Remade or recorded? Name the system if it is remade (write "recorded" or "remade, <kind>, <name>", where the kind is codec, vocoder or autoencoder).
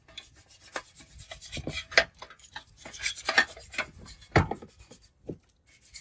recorded